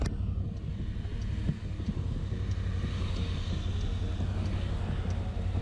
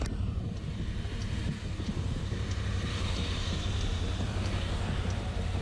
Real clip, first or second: first